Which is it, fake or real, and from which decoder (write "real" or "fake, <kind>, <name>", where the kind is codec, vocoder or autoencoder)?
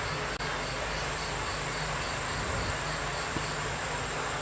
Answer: real